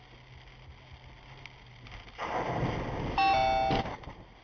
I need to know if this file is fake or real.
real